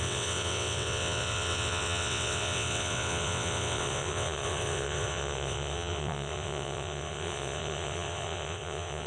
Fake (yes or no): yes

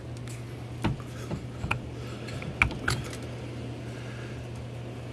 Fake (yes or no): no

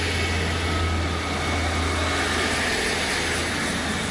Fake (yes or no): no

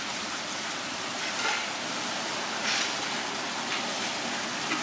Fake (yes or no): no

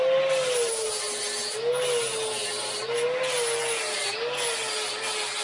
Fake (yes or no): no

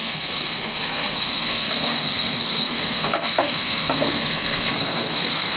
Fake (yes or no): yes